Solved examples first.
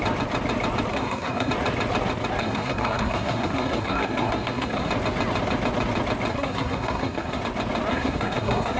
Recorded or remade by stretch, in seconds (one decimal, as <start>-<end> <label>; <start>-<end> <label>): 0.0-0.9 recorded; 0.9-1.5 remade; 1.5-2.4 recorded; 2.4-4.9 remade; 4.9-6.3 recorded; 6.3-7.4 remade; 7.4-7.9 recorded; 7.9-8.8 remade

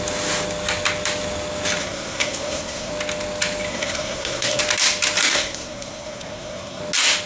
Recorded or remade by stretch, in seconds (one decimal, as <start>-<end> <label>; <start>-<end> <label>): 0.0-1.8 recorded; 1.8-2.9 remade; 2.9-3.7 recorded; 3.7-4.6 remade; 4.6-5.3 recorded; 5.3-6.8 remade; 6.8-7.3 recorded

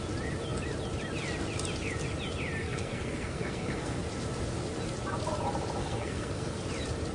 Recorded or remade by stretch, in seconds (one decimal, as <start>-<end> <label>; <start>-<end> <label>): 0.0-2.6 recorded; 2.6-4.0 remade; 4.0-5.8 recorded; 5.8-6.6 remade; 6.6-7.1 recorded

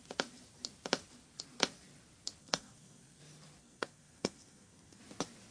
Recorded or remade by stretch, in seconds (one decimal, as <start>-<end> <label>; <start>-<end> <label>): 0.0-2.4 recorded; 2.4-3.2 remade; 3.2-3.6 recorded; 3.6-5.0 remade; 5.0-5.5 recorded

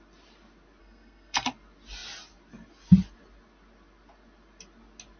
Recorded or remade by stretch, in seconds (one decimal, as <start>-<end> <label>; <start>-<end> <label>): 0.0-0.8 recorded; 0.8-1.5 remade; 1.5-5.2 recorded

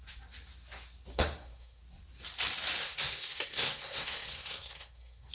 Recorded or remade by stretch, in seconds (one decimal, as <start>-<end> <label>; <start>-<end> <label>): 0.0-1.1 recorded; 1.1-1.8 remade; 1.8-2.8 recorded; 2.8-5.3 remade